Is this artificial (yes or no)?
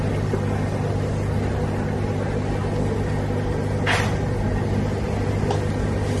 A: no